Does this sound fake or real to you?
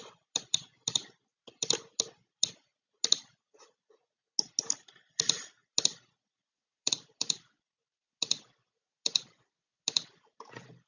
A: real